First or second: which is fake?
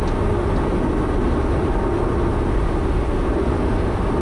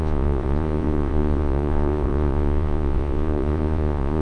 second